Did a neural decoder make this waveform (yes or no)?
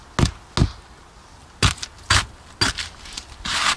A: no